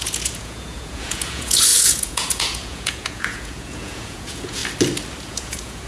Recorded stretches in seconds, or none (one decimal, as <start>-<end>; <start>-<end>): 4.6-5.2